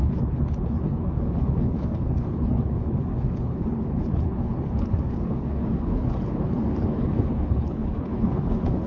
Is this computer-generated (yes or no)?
yes